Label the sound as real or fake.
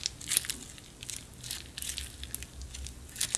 real